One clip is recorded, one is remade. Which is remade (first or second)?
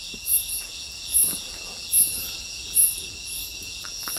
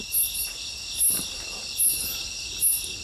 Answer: first